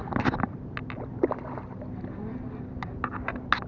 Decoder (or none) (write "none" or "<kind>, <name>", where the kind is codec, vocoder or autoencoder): none